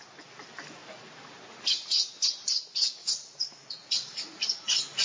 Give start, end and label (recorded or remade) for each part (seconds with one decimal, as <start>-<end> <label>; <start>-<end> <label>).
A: 0.0-3.0 recorded; 3.0-5.0 remade